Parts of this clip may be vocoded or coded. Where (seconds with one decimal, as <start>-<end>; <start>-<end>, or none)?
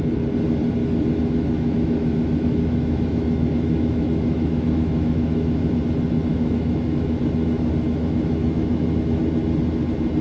0.8-5.7; 6.3-9.2